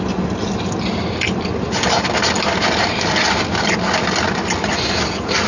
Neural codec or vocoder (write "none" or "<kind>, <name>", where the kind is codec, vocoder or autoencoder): none